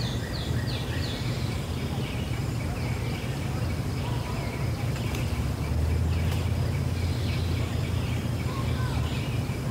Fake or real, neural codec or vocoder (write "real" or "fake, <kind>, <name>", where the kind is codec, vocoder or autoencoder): real